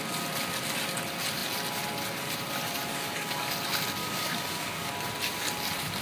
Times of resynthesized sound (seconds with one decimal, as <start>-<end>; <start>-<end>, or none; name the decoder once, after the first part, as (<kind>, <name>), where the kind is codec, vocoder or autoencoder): 2.9-3.5 (codec, DAC); 4.0-4.9